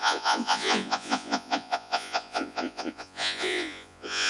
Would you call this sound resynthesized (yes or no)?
yes